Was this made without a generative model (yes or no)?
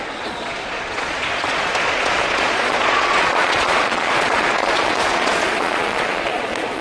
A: no